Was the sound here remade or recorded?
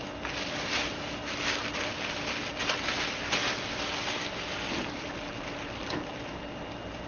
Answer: recorded